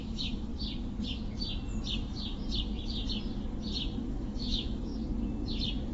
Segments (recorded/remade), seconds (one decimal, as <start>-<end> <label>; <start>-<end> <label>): 0.0-0.5 remade; 0.5-4.0 recorded; 4.0-4.9 remade; 4.9-5.9 recorded